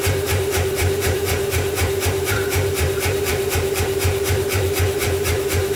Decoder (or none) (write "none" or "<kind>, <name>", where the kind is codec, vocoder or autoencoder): vocoder, BigVGAN v2